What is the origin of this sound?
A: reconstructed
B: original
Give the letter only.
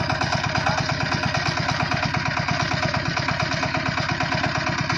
B